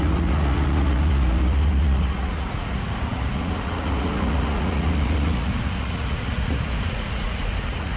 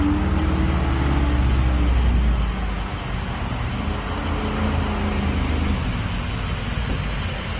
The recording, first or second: second